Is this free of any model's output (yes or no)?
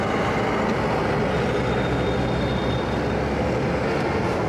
yes